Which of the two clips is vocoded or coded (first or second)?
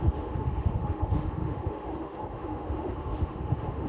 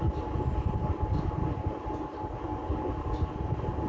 first